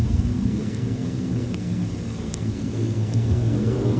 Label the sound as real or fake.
fake